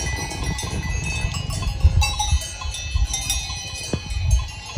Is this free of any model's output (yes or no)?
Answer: yes